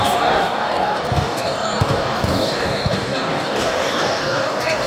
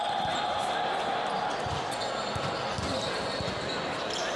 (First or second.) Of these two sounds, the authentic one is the second